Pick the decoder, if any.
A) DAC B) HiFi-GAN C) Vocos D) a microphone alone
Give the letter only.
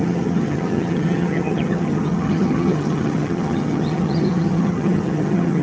B